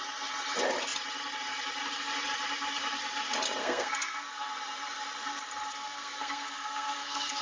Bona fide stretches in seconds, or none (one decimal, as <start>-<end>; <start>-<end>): 0.0-3.6; 4.5-5.7